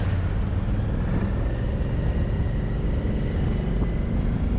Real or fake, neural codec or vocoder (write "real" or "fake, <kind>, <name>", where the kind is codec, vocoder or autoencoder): real